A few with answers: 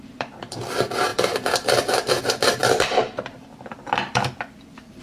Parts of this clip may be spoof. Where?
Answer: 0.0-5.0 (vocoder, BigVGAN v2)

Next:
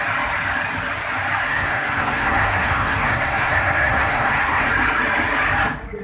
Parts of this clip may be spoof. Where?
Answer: 1.5-4.7 (codec, SNAC)

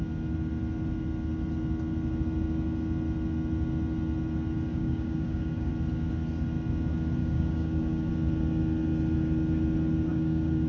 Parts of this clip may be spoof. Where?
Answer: 4.7-5.7 (codec, DAC); 7.2-8.1; 10.1-10.7

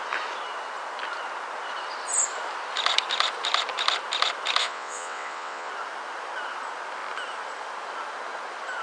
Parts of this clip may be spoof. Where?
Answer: 4.6-5.7 (vocoder, WaveNeXt)

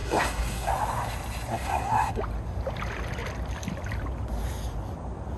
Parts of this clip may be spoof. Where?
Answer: 0.0-0.7 (codec, SNAC); 1.5-2.2

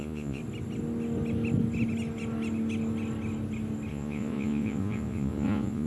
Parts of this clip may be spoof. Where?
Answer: 0.0-0.4 (vocoder, Vocos); 3.9-5.9